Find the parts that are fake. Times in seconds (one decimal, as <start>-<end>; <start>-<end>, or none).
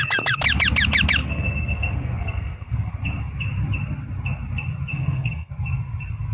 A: 1.2-2.9; 4.9-5.5